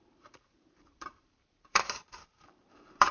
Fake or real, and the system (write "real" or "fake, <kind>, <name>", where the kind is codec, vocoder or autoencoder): fake, vocoder, BigVGAN v2